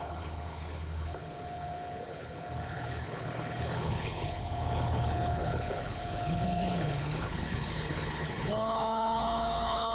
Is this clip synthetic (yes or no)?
yes